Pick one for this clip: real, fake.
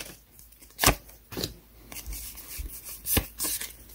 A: real